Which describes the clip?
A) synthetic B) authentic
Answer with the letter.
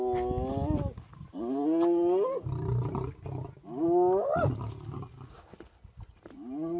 B